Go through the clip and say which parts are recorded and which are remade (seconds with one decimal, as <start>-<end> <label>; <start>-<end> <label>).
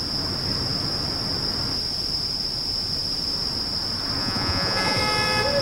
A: 0.0-4.2 recorded; 4.2-5.0 remade; 5.0-5.6 recorded